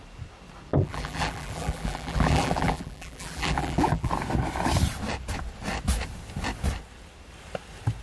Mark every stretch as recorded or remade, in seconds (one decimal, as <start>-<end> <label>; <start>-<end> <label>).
0.0-0.7 recorded; 0.7-4.1 remade; 4.1-8.0 recorded